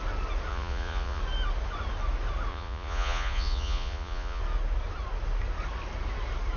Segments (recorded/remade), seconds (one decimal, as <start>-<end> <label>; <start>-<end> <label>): 0.0-0.5 recorded; 0.5-1.2 remade; 1.2-2.5 recorded; 2.5-4.4 remade; 4.4-6.6 recorded